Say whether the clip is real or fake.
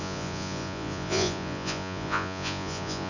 fake